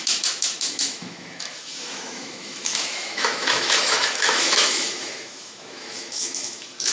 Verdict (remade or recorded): remade